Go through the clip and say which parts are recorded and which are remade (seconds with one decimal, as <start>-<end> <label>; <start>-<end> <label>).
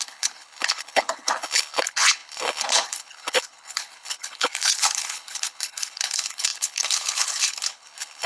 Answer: 0.0-8.3 remade